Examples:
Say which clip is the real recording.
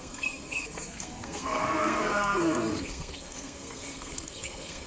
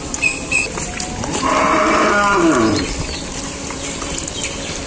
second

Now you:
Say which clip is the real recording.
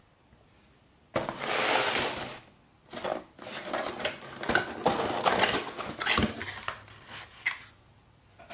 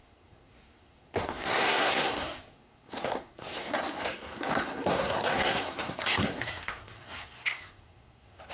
first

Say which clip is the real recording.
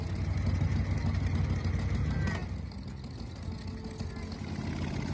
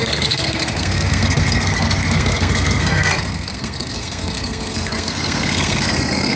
first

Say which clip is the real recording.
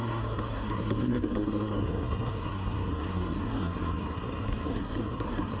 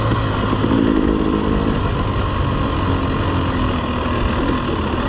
second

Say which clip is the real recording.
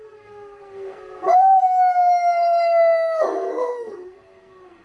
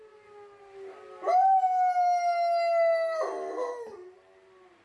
second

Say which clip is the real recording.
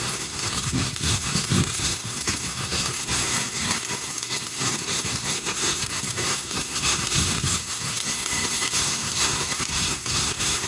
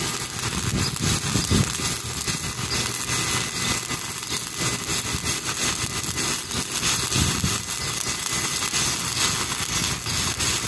second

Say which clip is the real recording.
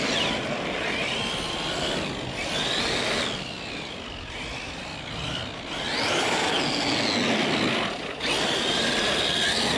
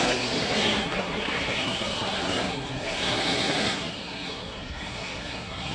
first